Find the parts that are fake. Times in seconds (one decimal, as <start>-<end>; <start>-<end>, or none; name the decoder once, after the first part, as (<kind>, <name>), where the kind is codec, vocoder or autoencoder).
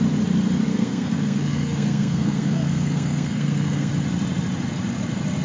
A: 0.7-3.9 (codec, SNAC)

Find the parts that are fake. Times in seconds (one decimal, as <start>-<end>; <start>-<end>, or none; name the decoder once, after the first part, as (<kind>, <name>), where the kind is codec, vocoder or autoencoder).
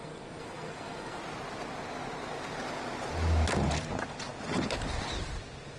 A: 0.0-1.2 (codec, SNAC)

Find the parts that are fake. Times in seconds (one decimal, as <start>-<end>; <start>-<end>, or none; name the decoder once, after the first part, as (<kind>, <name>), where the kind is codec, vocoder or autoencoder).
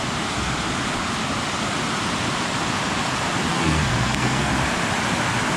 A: 3.5-4.5 (codec, SNAC)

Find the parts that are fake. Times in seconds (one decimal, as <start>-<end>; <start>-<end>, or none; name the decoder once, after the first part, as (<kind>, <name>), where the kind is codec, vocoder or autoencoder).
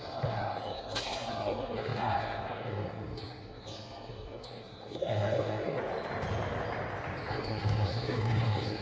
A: 0.0-5.8 (codec, SNAC); 7.3-8.8